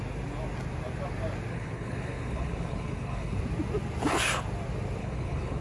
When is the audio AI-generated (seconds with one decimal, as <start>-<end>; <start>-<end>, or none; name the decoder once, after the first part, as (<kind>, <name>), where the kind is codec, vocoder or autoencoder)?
1.5-3.4 (codec, HILCodec); 5.0-5.6